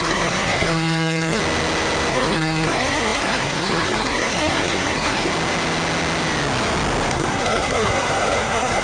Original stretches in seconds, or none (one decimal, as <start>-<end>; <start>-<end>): 1.4-2.1; 5.3-7.1